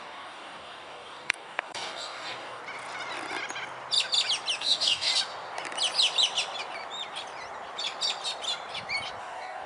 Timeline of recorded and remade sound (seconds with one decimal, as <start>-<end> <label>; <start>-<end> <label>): 0.0-2.6 remade; 2.6-4.6 recorded; 4.6-5.1 remade; 5.1-9.2 recorded; 9.2-9.7 remade